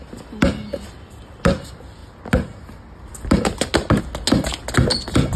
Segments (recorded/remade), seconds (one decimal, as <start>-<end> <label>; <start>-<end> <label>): 0.0-5.4 recorded